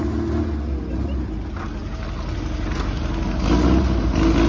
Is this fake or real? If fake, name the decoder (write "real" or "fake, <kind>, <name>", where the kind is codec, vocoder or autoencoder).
real